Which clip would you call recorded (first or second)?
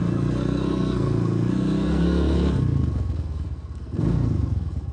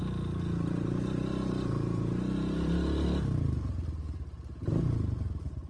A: second